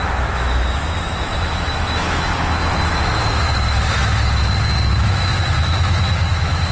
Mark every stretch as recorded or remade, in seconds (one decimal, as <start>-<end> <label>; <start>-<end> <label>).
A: 0.0-6.7 remade